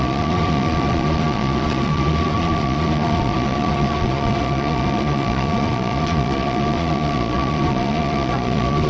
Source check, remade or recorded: remade